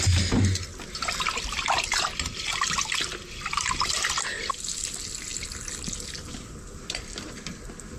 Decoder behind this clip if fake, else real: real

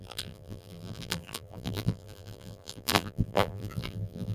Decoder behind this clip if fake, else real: fake, vocoder, BigVGAN v2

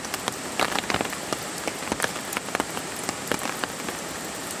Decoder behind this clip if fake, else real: fake, vocoder, BigVGAN v2